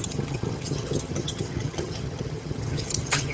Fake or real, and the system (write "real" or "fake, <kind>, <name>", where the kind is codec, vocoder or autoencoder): fake, vocoder, HiFi-GAN